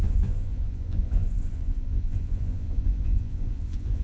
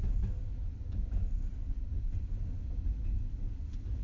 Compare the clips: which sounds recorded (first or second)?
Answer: second